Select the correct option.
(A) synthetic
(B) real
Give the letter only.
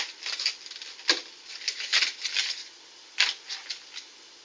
B